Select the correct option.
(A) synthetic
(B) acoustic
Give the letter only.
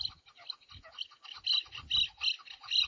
B